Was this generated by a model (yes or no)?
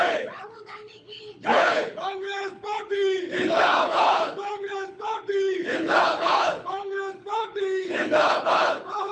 yes